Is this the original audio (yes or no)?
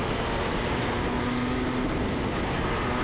yes